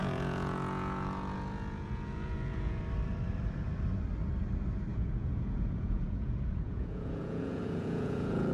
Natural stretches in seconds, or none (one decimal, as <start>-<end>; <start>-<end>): 2.8-4.9